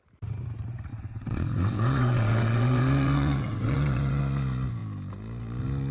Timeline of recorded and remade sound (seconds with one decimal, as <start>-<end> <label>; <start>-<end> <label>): 0.0-0.9 recorded; 0.9-4.2 remade; 4.2-5.9 recorded